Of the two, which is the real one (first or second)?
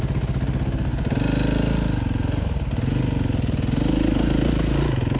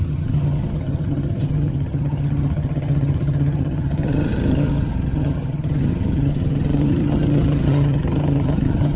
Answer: first